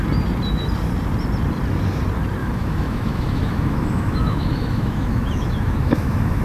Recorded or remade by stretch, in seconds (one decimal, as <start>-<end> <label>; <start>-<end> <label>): 0.0-2.4 recorded; 2.4-6.4 remade